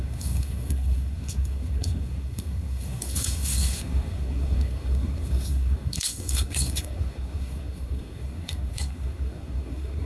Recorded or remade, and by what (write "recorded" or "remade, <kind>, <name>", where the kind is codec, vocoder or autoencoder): remade, codec, SNAC